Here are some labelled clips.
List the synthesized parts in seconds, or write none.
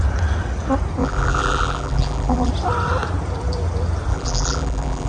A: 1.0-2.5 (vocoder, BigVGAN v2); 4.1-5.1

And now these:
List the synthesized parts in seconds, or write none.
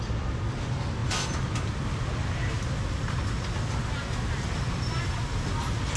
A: none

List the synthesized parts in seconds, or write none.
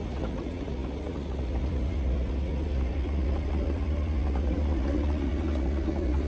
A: 0.0-6.3 (vocoder, Vocos)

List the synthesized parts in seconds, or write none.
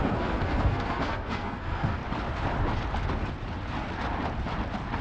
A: 0.0-2.0 (codec, SNAC)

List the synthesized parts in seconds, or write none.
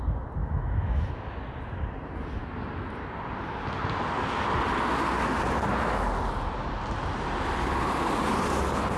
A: 0.4-1.1 (autoencoder, DAC-VAE)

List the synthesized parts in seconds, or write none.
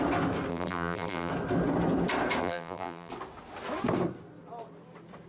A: 0.5-1.3 (vocoder, BigVGAN v2); 2.4-3.1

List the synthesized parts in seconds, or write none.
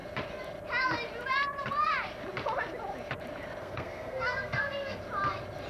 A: 3.6-5.0 (codec, SNAC)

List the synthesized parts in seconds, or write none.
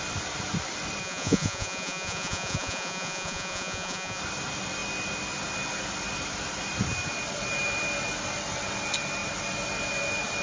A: 1.0-4.2 (vocoder, Vocos)